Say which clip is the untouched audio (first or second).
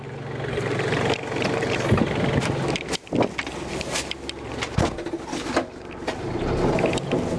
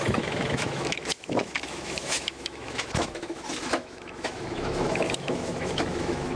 first